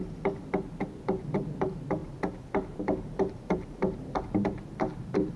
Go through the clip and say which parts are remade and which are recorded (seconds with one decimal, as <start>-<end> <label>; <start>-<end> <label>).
0.0-1.3 recorded; 1.3-5.4 remade